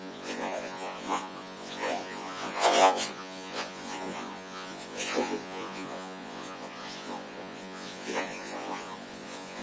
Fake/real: fake